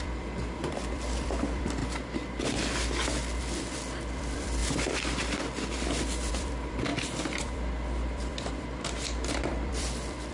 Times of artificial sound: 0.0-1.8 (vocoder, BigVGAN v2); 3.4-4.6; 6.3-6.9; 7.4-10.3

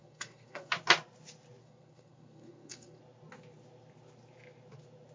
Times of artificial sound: 0.0-0.7 (codec, SNAC); 1.6-3.0

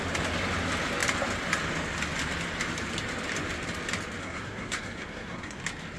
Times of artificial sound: 4.2-5.6 (codec, SNAC)

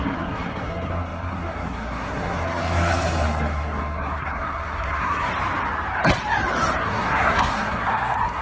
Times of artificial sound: 0.0-5.3 (codec, SNAC); 6.8-8.4

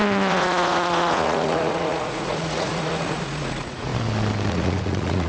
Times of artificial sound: 0.0-3.9 (vocoder, Vocos); 4.5-5.3